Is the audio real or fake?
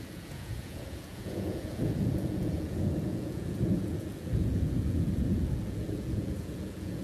fake